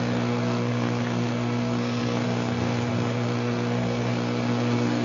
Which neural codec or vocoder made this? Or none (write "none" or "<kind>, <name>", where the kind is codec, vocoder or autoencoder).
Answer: codec, SNAC